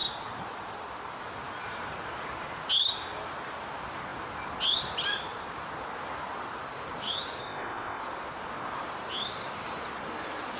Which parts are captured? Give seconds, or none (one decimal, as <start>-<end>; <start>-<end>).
0.0-7.4; 8.0-10.6